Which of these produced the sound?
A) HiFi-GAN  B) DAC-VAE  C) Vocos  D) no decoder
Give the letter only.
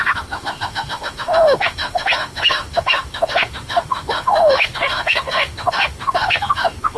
B